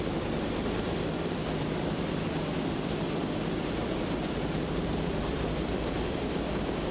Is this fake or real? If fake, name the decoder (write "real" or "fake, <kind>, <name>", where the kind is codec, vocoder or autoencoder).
fake, vocoder, BigVGAN v2